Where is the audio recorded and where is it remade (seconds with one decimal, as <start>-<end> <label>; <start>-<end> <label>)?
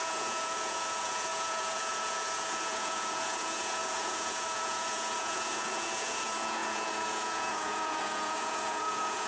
0.0-9.3 remade